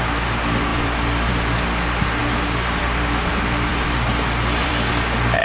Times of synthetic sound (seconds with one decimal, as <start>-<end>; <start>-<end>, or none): 0.7-1.3; 3.7-4.9